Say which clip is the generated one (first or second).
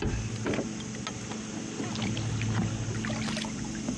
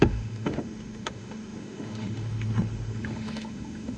second